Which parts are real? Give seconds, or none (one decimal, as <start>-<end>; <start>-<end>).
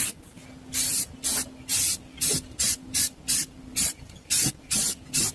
0.0-3.7; 4.5-5.3